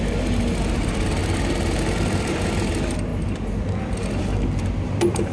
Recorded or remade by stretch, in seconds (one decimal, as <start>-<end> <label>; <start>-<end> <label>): 0.0-5.3 recorded